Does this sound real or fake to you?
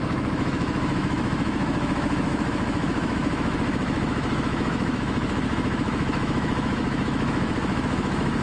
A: fake